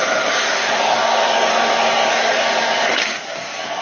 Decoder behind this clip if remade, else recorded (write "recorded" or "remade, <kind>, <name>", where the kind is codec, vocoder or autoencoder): remade, codec, DAC